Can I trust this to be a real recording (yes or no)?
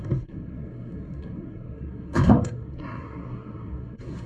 no